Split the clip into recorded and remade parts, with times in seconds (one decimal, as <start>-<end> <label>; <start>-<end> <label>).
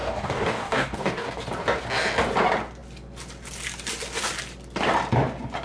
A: 0.0-1.3 remade; 1.3-5.6 recorded